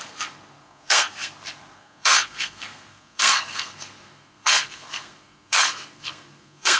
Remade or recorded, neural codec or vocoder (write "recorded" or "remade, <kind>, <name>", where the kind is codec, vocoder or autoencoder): remade, codec, SNAC